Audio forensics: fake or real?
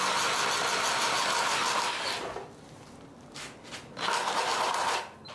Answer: real